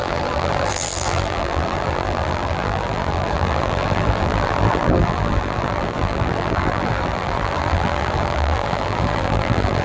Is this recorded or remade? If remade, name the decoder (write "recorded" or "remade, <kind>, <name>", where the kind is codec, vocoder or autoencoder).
remade, vocoder, BigVGAN v2